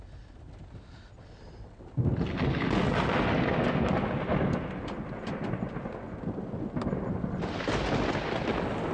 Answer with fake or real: real